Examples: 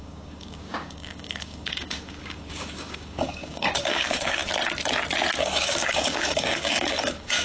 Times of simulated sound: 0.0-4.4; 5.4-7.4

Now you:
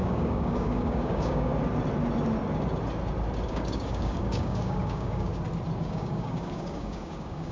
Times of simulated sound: 0.0-1.5; 3.5-5.3; 5.8-7.5

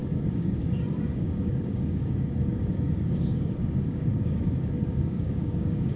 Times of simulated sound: 0.0-6.0